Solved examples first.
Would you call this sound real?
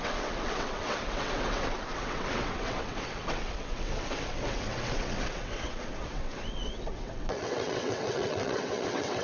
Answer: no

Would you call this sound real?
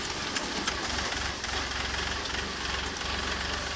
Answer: yes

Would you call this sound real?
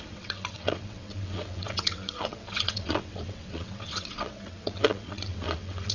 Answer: no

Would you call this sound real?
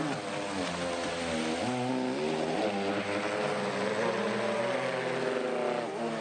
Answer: yes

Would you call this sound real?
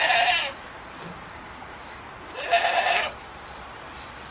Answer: yes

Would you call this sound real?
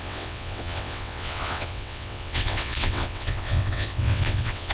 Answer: no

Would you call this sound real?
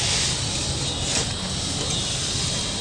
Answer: yes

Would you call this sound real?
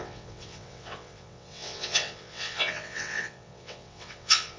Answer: no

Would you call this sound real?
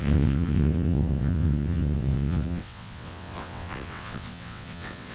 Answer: no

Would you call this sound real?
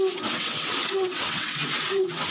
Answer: no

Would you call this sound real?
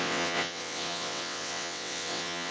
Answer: no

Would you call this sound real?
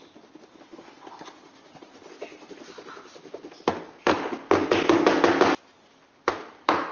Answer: yes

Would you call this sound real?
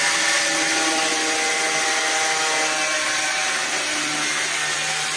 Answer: yes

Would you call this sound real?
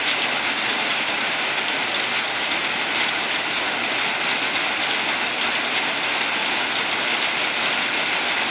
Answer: yes